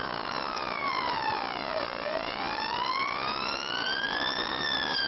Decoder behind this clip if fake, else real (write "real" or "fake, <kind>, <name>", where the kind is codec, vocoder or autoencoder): fake, vocoder, Vocos